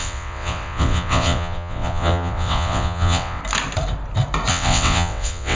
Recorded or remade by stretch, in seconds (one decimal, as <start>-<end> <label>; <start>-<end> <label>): 0.0-3.4 remade; 3.4-4.5 recorded; 4.5-5.6 remade